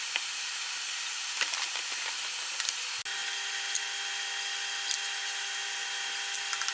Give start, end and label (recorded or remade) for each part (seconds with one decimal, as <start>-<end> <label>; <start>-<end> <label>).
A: 0.0-6.7 recorded